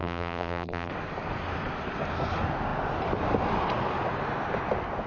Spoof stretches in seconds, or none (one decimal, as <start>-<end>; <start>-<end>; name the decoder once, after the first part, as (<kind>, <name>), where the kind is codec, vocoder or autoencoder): 0.0-0.9 (vocoder, BigVGAN v2)